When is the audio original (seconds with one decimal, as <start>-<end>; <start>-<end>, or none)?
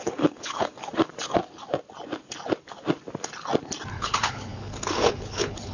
0.8-3.9